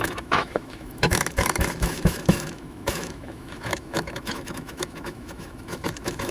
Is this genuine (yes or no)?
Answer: no